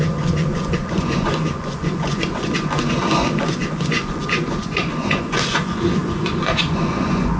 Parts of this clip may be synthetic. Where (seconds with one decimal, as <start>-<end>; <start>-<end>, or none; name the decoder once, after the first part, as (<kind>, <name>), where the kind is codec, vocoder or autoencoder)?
0.0-7.4 (vocoder, Vocos)